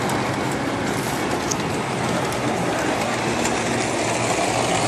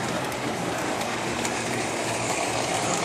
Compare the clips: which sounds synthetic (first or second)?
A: second